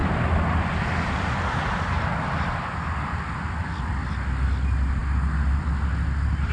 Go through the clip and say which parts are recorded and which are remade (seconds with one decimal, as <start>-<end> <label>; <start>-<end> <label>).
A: 0.0-6.5 recorded